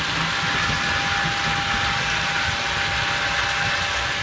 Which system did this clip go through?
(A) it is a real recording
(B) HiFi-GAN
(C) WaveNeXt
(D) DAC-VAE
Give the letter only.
A